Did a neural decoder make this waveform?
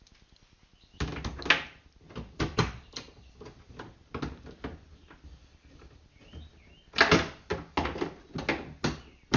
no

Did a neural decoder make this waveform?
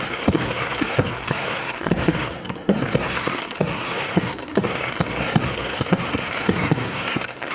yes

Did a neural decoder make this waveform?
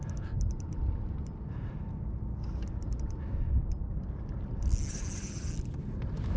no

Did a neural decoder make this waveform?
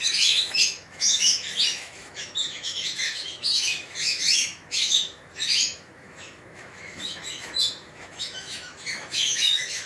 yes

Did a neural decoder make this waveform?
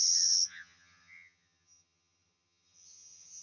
yes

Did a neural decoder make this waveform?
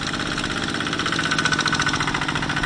no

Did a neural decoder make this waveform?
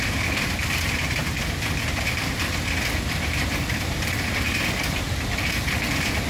yes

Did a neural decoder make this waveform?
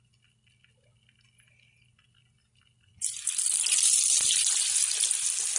no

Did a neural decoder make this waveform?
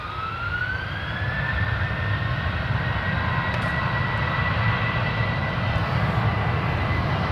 yes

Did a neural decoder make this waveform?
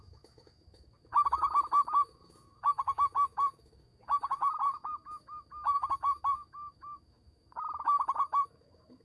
yes